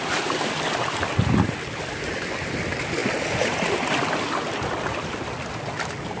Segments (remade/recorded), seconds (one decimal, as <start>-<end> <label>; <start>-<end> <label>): 0.0-6.2 recorded